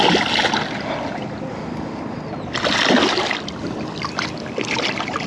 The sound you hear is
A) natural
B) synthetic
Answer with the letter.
A